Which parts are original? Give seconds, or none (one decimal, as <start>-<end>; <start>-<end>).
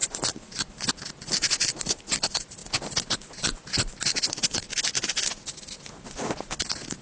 0.9-7.0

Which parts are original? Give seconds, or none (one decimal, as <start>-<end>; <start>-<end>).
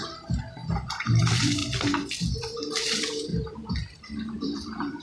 0.6-1.2; 1.6-2.7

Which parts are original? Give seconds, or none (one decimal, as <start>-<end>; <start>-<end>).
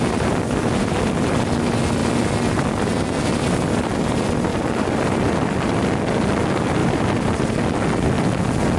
1.3-4.5; 5.2-8.8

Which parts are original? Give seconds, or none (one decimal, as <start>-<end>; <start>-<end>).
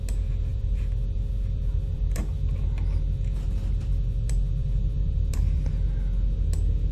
0.0-0.5; 2.4-3.6; 5.7-6.9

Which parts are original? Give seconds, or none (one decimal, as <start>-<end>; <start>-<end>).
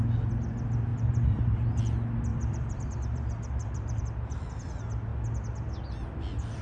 0.0-0.9; 1.8-2.3; 4.0-6.6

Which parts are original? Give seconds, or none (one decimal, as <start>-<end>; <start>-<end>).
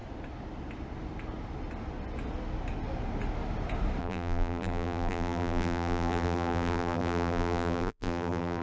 0.0-4.0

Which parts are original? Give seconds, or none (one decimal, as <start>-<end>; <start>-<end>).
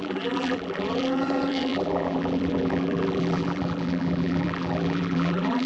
none